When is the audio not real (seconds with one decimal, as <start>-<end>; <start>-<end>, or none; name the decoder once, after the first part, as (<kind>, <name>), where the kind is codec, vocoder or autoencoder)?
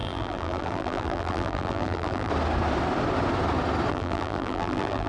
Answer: 0.0-2.3 (vocoder, BigVGAN v2); 3.9-5.1